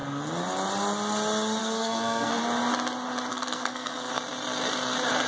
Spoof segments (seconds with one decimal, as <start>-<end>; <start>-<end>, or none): 1.6-2.4; 3.3-4.1